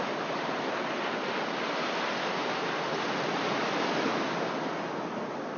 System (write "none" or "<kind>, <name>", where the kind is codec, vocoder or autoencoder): none